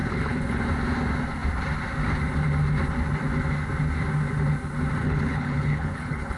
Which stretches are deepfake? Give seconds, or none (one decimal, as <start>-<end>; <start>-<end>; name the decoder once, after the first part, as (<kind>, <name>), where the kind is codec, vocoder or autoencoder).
0.0-0.6 (codec, HILCodec); 5.0-6.4

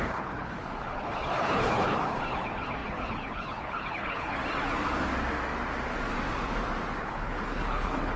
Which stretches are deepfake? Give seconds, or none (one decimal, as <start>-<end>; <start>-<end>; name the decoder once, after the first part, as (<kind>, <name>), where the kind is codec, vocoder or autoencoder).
0.0-4.4 (codec, HILCodec); 7.0-8.2

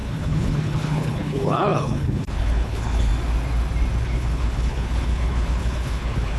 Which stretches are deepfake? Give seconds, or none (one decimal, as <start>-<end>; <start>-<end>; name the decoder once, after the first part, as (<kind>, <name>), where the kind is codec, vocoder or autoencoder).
0.0-3.1 (codec, HILCodec); 4.0-6.4

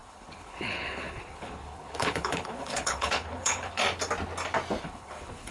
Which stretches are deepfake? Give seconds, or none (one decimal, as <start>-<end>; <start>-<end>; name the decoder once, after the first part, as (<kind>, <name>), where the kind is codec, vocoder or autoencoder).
0.0-3.8 (codec, HILCodec); 4.8-5.5

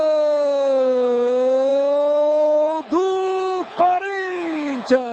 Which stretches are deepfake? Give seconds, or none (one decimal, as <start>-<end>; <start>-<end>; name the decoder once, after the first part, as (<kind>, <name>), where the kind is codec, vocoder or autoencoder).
0.0-5.1 (codec, HILCodec)

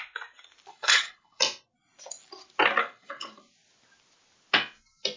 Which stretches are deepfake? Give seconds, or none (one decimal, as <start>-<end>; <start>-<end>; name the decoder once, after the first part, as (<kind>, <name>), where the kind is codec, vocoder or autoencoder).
0.7-1.4 (codec, HILCodec); 2.8-3.4

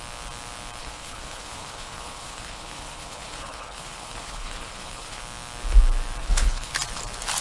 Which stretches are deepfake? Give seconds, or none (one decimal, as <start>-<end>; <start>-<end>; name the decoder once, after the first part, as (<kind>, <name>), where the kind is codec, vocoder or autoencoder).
0.8-5.2 (codec, HILCodec); 6.2-6.7

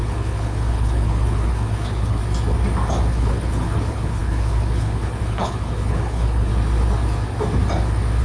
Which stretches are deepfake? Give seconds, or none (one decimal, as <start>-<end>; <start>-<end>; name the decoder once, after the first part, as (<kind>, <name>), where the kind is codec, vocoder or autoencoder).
0.0-2.2 (codec, HILCodec); 3.1-6.5